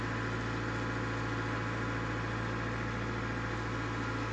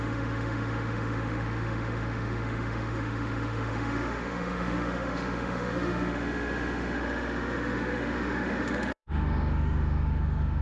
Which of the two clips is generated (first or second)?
second